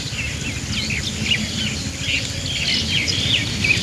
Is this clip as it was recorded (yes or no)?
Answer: yes